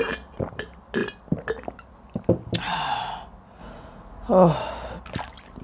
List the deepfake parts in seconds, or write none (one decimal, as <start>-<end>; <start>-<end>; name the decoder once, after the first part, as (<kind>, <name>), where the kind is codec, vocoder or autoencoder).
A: 3.6-4.3 (vocoder, Vocos)